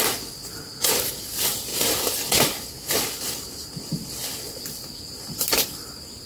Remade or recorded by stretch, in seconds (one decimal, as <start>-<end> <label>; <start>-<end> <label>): 0.0-6.3 recorded